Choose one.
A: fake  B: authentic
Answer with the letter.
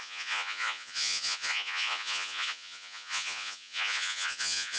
A